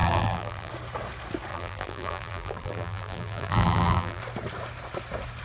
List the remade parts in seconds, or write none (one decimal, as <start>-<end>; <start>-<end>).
0.0-0.7; 1.5-4.2